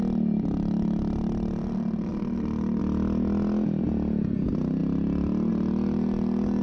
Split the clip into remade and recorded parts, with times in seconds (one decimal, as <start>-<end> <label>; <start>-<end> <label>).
0.0-6.6 recorded

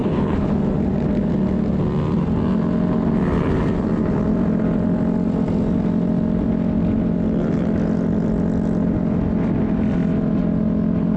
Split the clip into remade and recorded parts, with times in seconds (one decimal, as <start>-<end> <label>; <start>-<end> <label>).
0.0-0.5 remade; 0.5-11.2 recorded